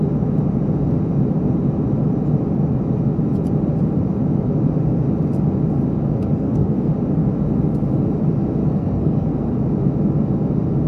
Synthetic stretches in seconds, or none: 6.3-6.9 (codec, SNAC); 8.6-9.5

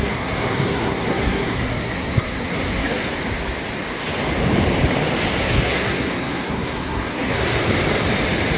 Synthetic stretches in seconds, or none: 0.0-3.2 (codec, SNAC); 5.4-7.6